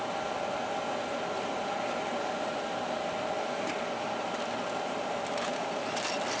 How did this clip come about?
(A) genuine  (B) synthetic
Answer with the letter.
A